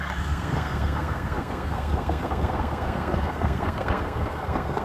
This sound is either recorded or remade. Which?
remade